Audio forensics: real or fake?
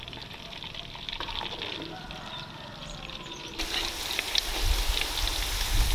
real